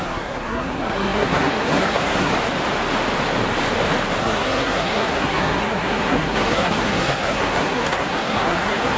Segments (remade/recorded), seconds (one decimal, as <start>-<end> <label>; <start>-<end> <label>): 0.0-2.3 remade; 2.3-4.2 recorded; 4.2-9.0 remade